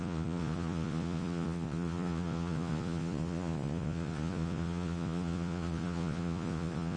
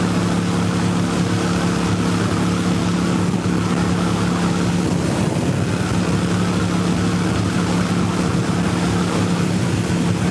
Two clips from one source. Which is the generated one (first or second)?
first